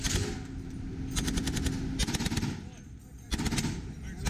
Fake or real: real